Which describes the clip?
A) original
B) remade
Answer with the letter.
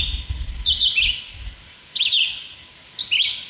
A